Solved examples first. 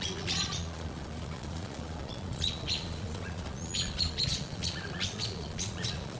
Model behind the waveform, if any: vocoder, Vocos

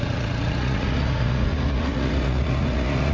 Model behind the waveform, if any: vocoder, Vocos